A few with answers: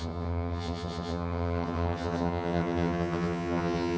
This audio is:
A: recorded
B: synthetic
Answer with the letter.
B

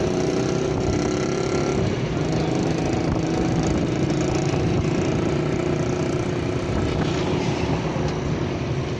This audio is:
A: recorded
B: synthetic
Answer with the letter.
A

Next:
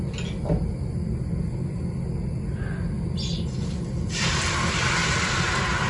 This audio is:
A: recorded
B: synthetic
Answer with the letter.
A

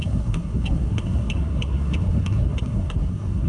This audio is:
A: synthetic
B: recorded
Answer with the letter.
A